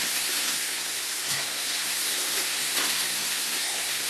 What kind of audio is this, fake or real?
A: fake